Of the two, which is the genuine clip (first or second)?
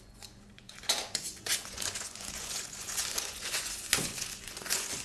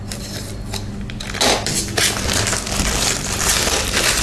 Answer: second